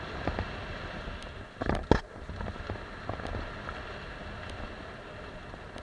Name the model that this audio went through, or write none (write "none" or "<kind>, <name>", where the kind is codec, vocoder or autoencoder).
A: none